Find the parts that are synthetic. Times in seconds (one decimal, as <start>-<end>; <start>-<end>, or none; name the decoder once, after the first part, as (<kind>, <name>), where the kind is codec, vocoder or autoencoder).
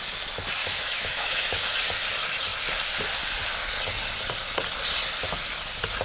0.6-1.6 (autoencoder, DAC-VAE)